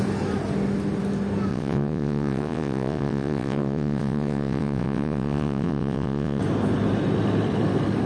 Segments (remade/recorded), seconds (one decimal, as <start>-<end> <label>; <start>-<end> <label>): 0.0-1.5 recorded; 1.5-6.4 remade; 6.4-8.1 recorded